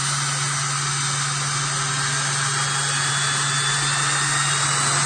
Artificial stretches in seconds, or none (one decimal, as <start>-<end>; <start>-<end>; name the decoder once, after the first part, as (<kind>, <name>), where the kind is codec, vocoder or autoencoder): none